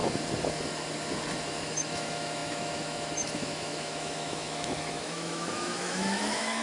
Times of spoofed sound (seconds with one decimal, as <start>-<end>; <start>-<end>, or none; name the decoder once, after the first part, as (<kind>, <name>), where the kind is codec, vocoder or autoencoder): 1.5-6.6 (autoencoder, DAC-VAE)